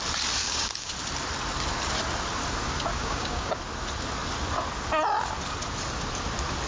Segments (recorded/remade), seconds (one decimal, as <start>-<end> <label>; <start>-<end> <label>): 0.0-0.4 recorded; 0.4-0.9 remade; 0.9-2.9 recorded; 2.9-3.6 remade; 3.6-6.7 recorded